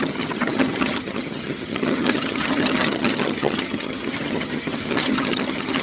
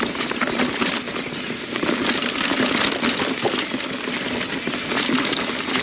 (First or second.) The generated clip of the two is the first